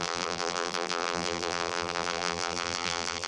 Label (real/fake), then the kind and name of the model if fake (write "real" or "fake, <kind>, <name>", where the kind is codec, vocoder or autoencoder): fake, vocoder, BigVGAN v2